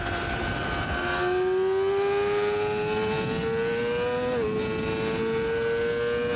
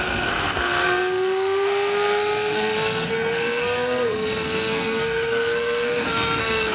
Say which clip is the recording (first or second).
first